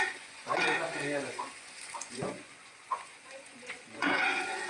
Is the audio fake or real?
fake